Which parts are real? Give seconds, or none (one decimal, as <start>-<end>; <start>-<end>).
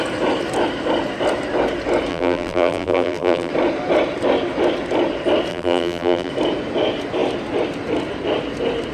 0.0-2.1; 3.5-5.5; 6.3-8.9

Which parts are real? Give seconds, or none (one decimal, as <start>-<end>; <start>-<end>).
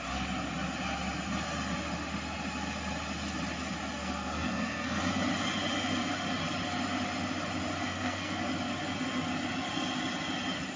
0.0-4.0; 5.0-7.9; 8.4-10.8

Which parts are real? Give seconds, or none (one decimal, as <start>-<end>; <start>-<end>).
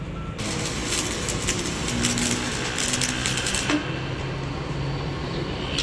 0.0-5.8